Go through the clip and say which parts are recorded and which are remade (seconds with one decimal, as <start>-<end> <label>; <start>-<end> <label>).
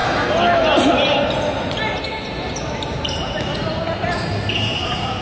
0.0-5.2 recorded